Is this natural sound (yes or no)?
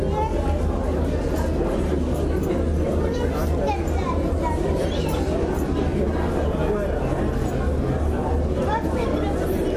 yes